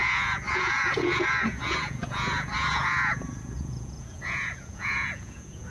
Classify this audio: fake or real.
fake